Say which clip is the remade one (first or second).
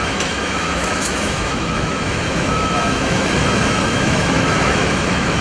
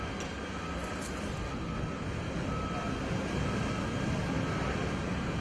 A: first